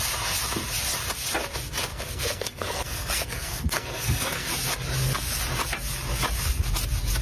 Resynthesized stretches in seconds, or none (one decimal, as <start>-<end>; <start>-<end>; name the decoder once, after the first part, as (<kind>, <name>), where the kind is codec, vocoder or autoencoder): 1.9-4.5 (codec, SNAC)